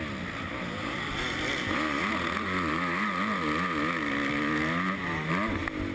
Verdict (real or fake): real